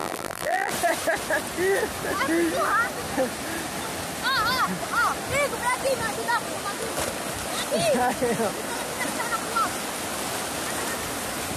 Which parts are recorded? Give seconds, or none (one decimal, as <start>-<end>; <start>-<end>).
0.7-11.6